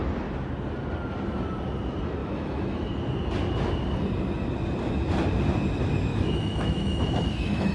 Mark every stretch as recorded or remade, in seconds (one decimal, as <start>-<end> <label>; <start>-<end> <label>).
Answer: 0.0-2.2 recorded; 2.2-2.9 remade; 2.9-6.1 recorded; 6.1-7.7 remade